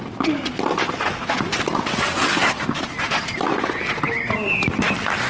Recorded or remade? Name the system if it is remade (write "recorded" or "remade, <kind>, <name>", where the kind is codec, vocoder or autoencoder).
recorded